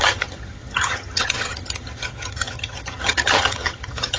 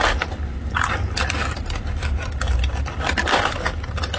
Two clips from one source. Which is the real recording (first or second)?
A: second